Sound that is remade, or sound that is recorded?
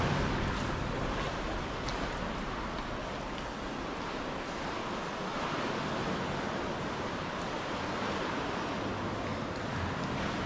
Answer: recorded